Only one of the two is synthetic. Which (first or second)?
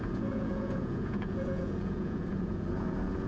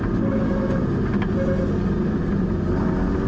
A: first